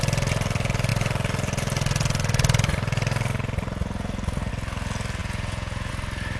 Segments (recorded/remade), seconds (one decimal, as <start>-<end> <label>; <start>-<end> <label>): 0.0-5.2 recorded; 5.2-5.9 remade; 5.9-6.4 recorded